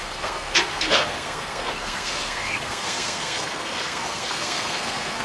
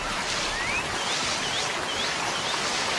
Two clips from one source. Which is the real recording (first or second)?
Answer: second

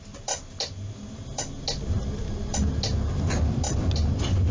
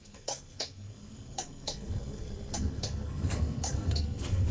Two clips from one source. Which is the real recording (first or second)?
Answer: first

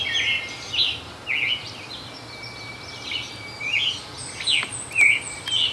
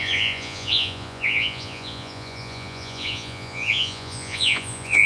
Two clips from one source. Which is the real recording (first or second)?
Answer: first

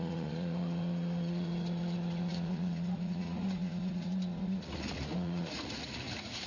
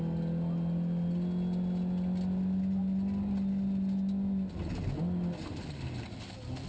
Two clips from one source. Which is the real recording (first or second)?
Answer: second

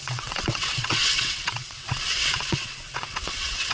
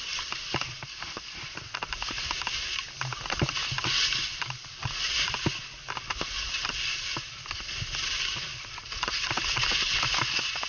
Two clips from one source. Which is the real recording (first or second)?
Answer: second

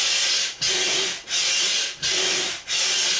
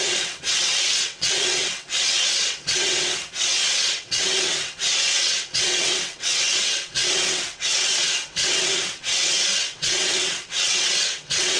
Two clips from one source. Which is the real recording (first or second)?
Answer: first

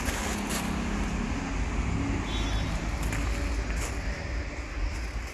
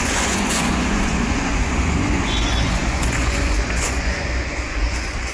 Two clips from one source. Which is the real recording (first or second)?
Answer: first